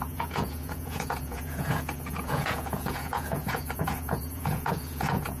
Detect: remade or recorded remade